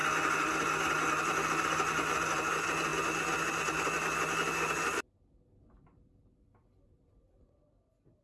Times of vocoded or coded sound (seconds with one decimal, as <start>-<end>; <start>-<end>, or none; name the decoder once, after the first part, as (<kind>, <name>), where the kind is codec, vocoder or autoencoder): none